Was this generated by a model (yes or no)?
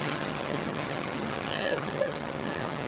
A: yes